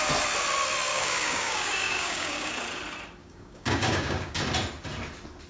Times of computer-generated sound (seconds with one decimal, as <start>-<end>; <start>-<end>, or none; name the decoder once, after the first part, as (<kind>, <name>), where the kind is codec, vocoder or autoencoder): 0.9-2.5 (codec, DAC); 3.2-4.4